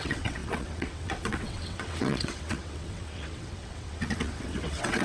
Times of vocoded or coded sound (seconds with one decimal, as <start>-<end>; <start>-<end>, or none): 0.0-5.0